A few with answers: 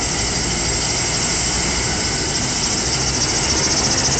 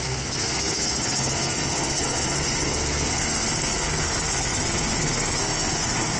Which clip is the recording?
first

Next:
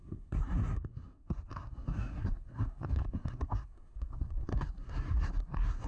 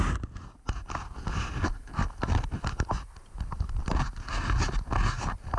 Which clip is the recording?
second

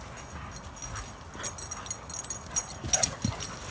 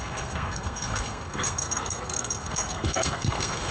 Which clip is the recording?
first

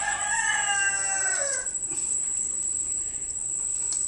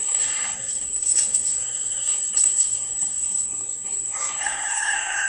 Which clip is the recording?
first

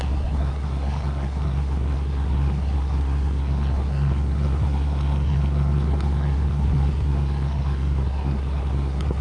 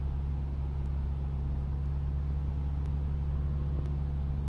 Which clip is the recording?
second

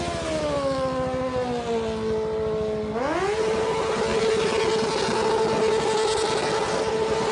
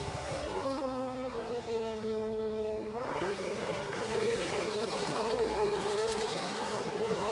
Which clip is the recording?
first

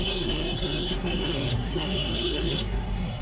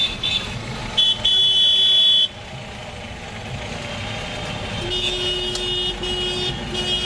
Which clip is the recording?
second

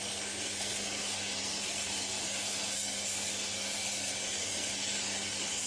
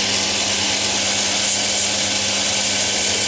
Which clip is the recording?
second